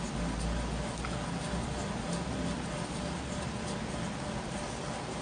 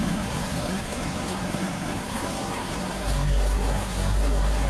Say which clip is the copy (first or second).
second